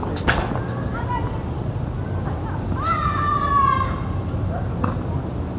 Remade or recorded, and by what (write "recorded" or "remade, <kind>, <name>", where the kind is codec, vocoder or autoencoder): recorded